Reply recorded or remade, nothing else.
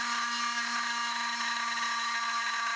recorded